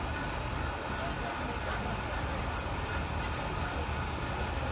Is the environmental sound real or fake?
real